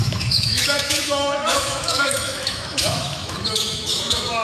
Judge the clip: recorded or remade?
remade